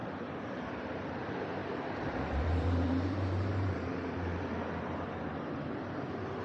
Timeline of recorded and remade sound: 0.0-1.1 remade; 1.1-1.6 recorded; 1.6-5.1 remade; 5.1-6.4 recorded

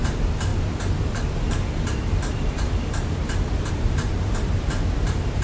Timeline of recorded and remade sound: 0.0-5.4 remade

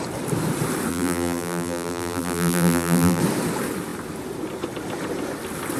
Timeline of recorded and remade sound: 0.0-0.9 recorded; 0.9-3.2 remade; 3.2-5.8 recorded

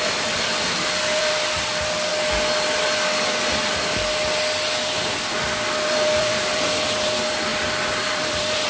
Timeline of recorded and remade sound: 0.0-2.1 remade; 2.1-5.4 recorded; 5.4-8.7 remade

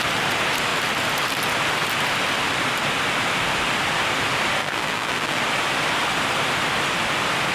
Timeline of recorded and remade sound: 0.0-4.6 recorded; 4.6-5.4 remade; 5.4-7.5 recorded

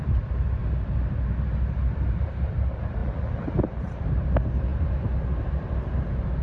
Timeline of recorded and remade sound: 0.0-0.6 remade; 0.6-2.2 recorded; 2.2-3.0 remade; 3.0-3.6 recorded; 3.6-6.4 remade

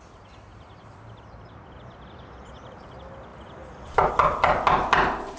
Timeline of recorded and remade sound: 0.0-0.5 recorded; 0.5-2.5 remade; 2.5-3.3 recorded; 3.3-4.1 remade; 4.1-5.4 recorded